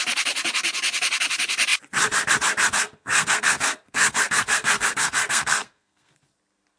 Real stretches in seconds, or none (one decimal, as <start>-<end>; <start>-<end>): 0.0-2.8; 6.1-6.8